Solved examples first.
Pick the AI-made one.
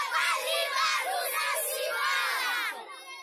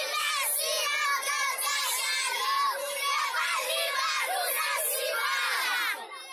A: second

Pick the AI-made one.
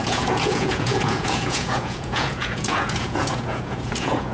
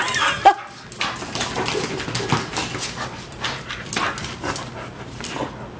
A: first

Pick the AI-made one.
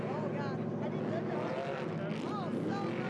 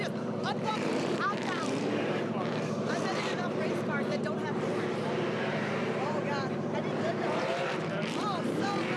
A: second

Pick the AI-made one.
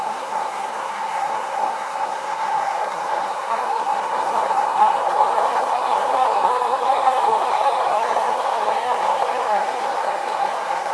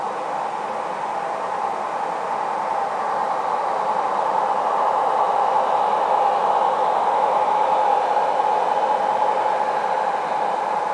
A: first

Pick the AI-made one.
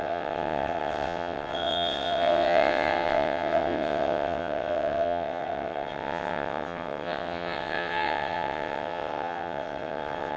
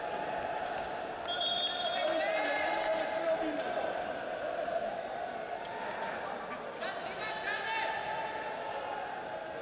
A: first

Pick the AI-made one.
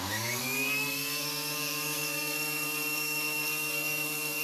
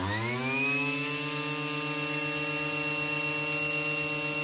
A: first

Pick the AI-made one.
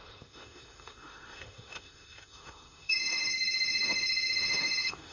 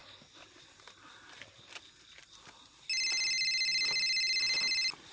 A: first